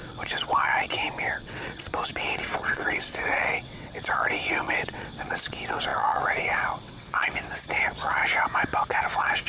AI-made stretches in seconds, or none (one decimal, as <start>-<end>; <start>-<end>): 0.0-8.2; 9.0-9.5

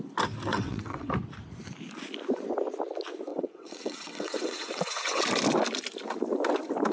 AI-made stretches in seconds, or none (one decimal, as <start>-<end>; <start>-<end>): 0.5-1.1; 3.3-5.2

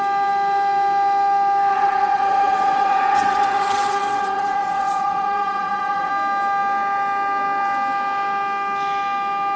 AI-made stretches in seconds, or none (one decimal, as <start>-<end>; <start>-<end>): 1.7-6.1

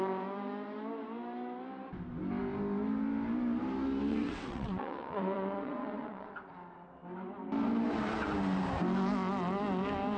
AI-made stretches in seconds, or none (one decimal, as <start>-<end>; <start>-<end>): 4.1-6.3

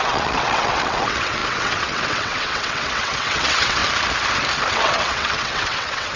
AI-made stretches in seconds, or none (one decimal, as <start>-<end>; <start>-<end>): 0.0-3.8; 4.7-6.2

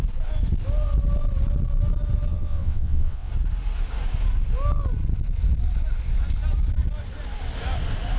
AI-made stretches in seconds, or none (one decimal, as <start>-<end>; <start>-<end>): 2.3-3.3